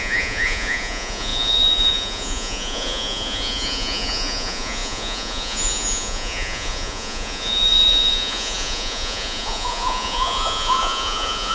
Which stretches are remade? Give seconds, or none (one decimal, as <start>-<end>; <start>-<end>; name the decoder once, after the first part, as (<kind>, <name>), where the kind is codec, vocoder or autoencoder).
0.0-11.5 (vocoder, Vocos)